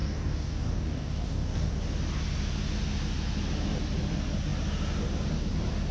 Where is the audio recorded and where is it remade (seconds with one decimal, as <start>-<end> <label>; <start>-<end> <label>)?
0.0-1.7 remade; 1.7-5.9 recorded